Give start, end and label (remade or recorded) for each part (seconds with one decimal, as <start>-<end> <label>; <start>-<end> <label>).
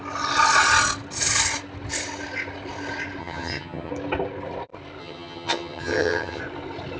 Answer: 0.0-3.2 recorded; 3.2-3.9 remade; 3.9-5.0 recorded; 5.0-6.4 remade; 6.4-7.0 recorded